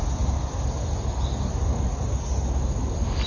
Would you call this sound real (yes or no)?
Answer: yes